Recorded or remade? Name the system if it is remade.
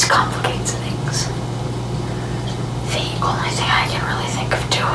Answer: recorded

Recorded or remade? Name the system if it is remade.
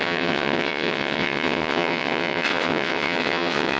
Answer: remade, vocoder, WaveNeXt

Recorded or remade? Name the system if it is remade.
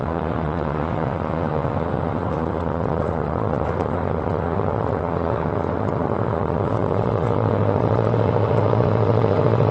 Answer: remade, vocoder, WaveNeXt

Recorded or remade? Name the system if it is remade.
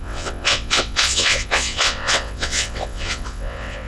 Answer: remade, vocoder, WaveNeXt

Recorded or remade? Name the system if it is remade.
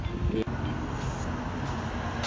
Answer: recorded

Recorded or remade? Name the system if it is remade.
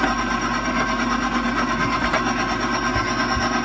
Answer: recorded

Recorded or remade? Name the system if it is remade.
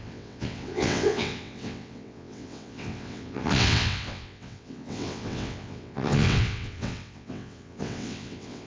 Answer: remade, vocoder, WaveNeXt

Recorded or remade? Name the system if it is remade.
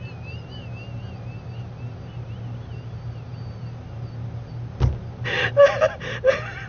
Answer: recorded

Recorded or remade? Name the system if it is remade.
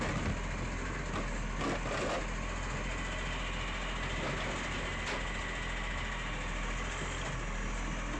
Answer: recorded